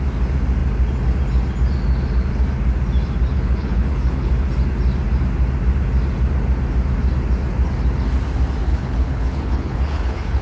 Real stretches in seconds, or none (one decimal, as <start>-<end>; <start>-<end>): 0.0-3.3; 4.3-8.7